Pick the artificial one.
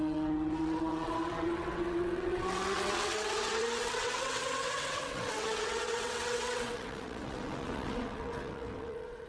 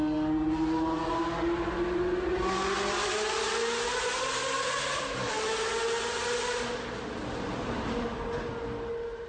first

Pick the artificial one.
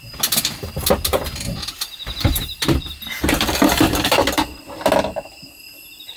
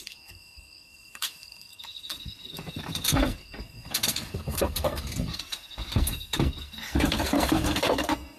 second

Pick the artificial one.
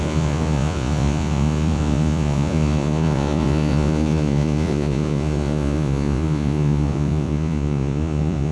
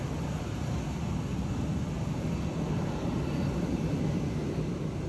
first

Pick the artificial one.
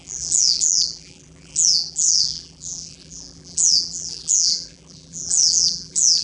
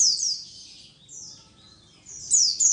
first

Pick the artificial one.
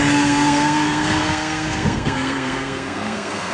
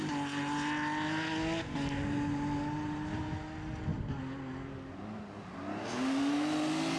first